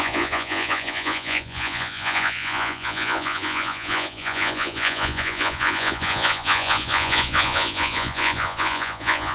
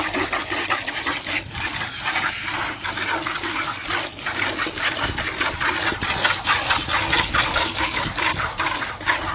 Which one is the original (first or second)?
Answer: second